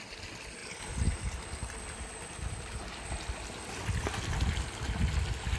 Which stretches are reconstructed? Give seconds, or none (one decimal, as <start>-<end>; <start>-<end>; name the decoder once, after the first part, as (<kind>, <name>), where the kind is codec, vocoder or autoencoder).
0.6-4.0 (vocoder, BigVGAN v2)